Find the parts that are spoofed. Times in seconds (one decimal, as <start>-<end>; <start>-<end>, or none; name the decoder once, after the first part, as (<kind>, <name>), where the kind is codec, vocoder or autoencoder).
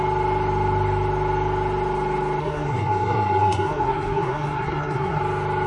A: 2.4-5.2 (codec, SNAC)